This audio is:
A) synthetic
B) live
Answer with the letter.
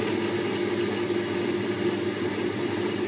B